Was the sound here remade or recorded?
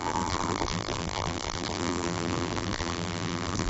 remade